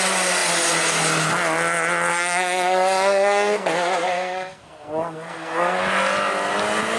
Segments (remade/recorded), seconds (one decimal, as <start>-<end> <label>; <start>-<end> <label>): 0.0-2.1 recorded; 2.1-5.8 remade; 5.8-7.0 recorded